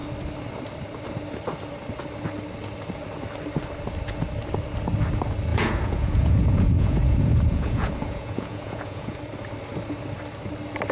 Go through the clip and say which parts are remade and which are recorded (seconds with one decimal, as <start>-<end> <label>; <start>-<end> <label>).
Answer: 0.0-5.5 recorded; 5.5-9.2 remade; 9.2-10.9 recorded

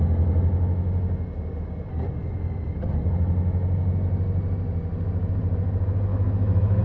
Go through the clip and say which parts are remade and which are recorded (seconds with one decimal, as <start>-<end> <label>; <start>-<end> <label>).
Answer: 0.0-6.1 recorded; 6.1-6.8 remade

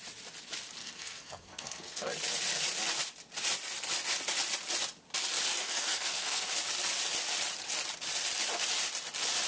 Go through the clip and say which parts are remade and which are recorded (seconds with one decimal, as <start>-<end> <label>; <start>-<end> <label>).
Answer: 0.0-0.8 recorded; 0.8-2.1 remade; 2.1-5.6 recorded; 5.6-6.5 remade; 6.5-9.5 recorded

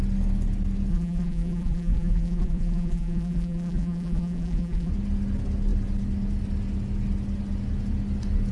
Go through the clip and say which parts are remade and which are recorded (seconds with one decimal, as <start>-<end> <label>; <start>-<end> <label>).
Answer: 0.0-0.9 recorded; 0.9-4.9 remade; 4.9-8.5 recorded